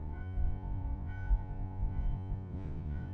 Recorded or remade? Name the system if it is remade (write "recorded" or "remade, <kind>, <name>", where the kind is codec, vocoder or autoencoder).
remade, vocoder, Vocos